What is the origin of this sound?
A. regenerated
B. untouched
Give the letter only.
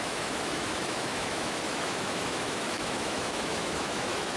A